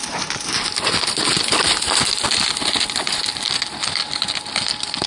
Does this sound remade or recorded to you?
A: recorded